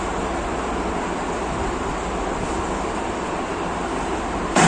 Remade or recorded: recorded